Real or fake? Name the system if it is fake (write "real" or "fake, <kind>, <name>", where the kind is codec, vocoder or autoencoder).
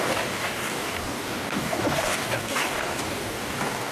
fake, codec, DAC